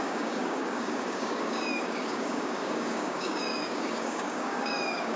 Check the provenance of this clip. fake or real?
fake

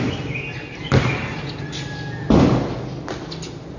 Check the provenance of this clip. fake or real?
real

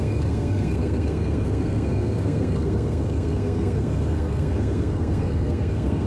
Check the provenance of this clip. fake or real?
fake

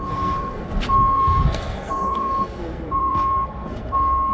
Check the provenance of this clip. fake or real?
fake